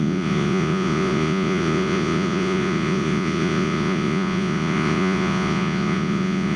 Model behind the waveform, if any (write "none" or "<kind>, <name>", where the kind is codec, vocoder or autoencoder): vocoder, Vocos